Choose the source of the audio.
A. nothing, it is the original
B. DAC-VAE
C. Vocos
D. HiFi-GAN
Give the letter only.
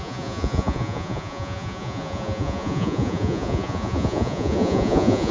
C